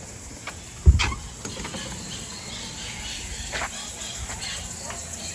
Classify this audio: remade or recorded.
recorded